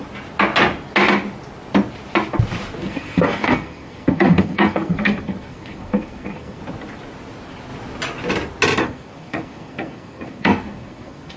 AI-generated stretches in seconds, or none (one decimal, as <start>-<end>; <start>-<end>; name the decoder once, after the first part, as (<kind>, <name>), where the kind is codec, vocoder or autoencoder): 2.8-6.6 (codec, SNAC); 8.8-11.4